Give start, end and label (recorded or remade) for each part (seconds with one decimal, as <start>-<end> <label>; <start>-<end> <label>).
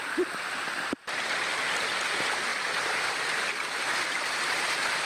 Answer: 0.0-5.1 recorded